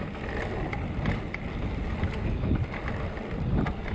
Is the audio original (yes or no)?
yes